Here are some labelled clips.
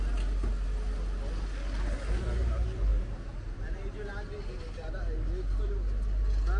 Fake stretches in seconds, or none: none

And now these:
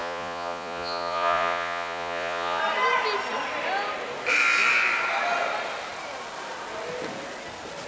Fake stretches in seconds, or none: 0.0-2.6

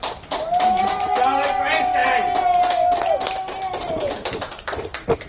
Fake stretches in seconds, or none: none